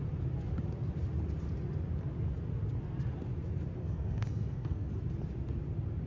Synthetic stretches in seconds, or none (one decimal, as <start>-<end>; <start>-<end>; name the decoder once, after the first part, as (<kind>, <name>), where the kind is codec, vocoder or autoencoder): 3.8-4.9 (codec, SNAC)